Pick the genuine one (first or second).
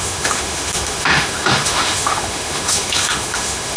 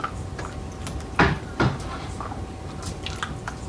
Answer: second